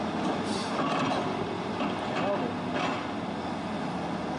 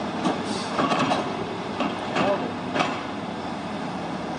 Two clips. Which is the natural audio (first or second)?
first